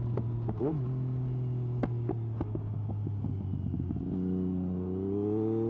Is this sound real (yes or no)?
yes